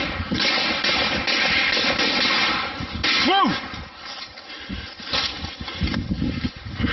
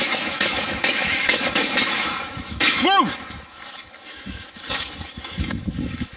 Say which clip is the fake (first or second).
second